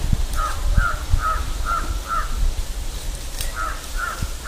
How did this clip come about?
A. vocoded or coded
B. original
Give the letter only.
B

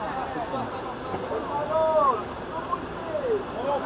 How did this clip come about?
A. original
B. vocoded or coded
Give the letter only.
A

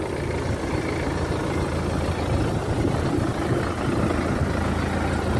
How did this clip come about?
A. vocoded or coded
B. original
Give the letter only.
B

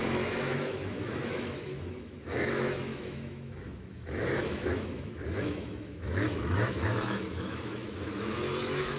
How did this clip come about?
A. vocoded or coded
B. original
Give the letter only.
A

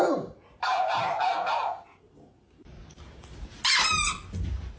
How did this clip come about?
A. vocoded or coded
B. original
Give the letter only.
B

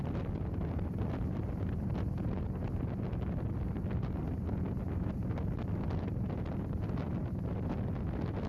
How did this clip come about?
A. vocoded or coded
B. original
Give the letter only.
B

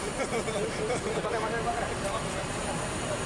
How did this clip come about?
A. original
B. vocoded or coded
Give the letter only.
A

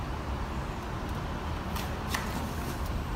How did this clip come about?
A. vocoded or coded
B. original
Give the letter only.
B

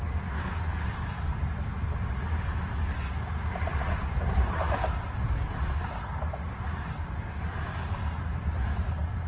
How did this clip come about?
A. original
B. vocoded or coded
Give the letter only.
A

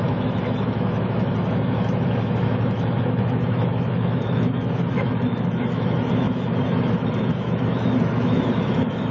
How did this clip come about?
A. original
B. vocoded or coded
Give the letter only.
B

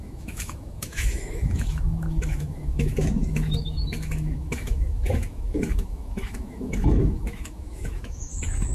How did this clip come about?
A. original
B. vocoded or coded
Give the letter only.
B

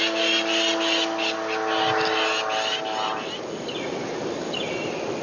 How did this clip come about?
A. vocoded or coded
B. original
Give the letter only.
B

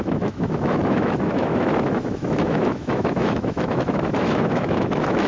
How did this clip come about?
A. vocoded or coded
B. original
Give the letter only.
A